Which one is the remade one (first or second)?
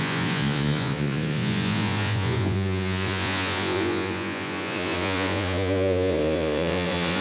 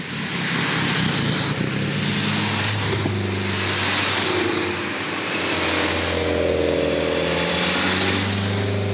first